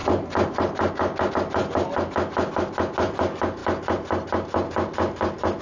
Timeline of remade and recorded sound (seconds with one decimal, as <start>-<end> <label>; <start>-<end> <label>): 0.0-5.6 recorded